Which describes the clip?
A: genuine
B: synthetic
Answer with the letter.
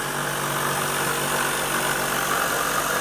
A